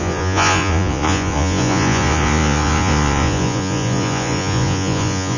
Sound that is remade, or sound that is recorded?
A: remade